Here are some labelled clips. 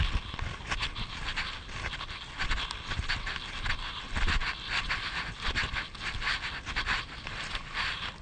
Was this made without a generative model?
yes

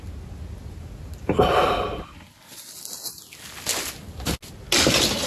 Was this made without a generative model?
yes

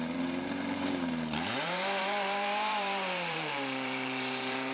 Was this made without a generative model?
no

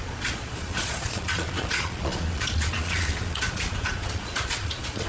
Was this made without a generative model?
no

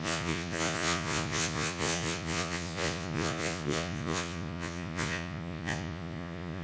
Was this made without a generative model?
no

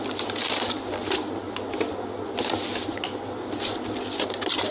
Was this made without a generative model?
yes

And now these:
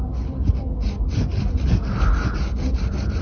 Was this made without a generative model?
yes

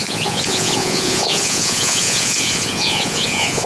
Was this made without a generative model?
no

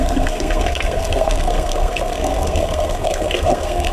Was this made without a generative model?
no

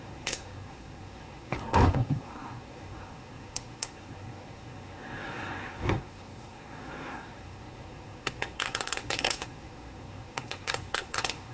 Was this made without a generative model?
no